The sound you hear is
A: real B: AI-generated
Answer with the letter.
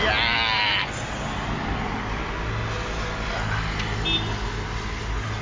A